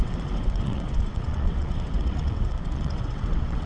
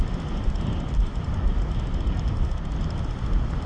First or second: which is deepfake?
first